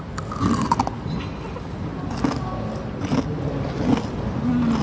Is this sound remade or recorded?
recorded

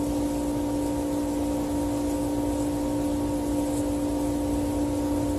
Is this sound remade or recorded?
recorded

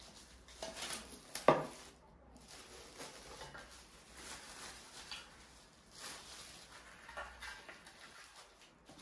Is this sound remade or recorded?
recorded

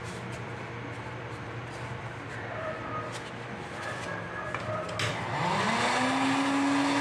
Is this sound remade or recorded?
recorded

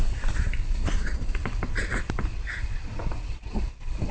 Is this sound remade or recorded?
recorded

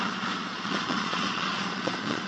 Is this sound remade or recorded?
remade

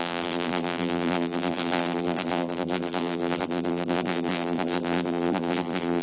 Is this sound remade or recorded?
remade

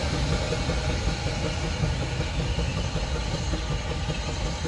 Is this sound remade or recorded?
recorded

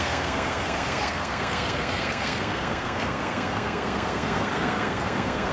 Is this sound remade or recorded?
remade